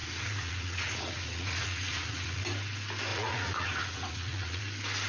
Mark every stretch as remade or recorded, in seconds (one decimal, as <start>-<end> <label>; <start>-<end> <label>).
0.0-2.4 remade; 2.4-3.1 recorded; 3.1-4.6 remade; 4.6-5.1 recorded